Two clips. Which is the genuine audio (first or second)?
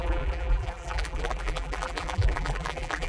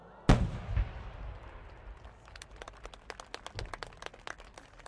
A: second